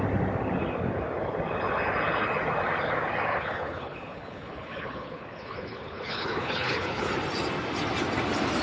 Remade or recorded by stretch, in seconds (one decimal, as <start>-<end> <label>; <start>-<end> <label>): 0.0-3.3 recorded; 3.3-7.1 remade; 7.1-8.6 recorded